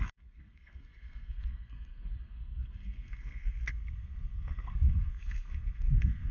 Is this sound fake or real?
fake